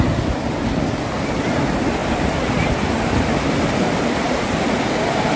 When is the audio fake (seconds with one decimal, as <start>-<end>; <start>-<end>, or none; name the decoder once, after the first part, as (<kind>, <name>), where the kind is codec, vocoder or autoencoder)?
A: none